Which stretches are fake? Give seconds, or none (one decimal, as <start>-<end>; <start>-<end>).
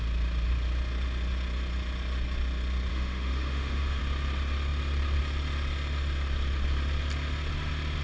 2.9-4.0